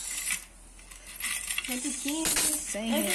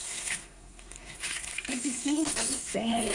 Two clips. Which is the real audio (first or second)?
first